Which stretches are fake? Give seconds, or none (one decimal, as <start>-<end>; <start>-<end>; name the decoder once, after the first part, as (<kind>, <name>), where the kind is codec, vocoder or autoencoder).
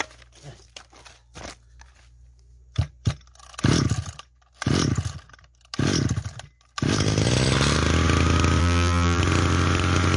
8.6-9.2 (vocoder, BigVGAN v2)